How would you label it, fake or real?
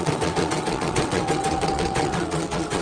fake